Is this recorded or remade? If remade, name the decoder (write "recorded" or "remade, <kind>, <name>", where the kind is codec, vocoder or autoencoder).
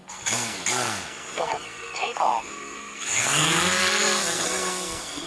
remade, codec, SNAC